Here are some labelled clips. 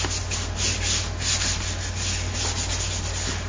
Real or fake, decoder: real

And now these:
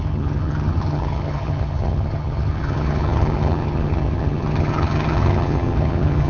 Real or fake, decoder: fake, vocoder, HiFi-GAN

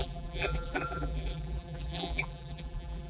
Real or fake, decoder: fake, vocoder, BigVGAN v2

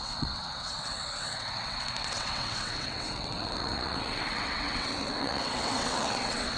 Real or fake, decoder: fake, vocoder, WaveNeXt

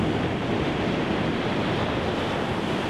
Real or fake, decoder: real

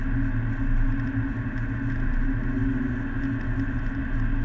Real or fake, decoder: real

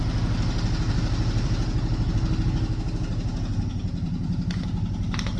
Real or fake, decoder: real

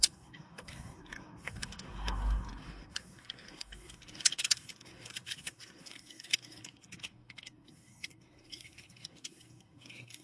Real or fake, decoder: fake, codec, SNAC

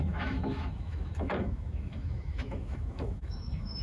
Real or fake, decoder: fake, autoencoder, DAC-VAE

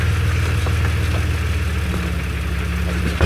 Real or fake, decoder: real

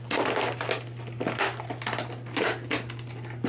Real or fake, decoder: real